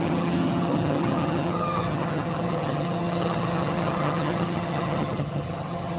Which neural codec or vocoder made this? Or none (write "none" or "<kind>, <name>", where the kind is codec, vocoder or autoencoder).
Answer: vocoder, HiFi-GAN